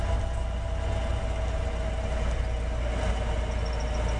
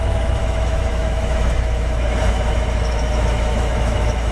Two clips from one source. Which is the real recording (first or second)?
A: first